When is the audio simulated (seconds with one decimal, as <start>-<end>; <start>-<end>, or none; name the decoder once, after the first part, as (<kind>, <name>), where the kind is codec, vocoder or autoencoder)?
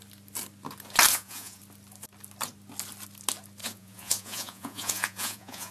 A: 1.1-1.6 (vocoder, Vocos); 3.6-5.7